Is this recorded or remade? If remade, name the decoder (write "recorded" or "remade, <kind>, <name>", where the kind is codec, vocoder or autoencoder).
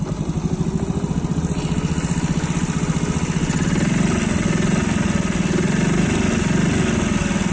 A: recorded